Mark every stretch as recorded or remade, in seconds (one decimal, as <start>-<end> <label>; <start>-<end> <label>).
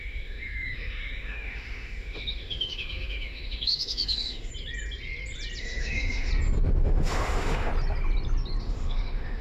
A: 0.0-4.5 remade; 4.5-5.6 recorded; 5.6-6.3 remade; 6.3-6.8 recorded; 6.8-7.7 remade; 7.7-8.6 recorded; 8.6-9.4 remade